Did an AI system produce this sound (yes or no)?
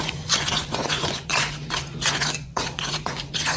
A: yes